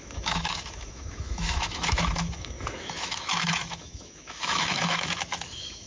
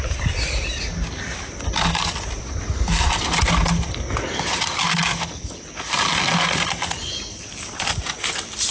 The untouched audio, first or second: second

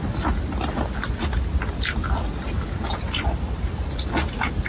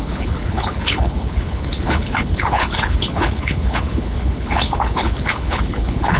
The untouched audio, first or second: first